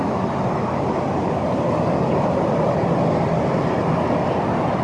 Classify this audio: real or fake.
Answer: real